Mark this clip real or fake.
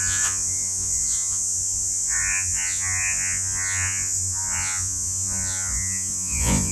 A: fake